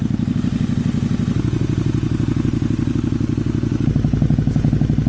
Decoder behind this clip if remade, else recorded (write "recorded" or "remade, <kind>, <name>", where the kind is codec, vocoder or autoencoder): recorded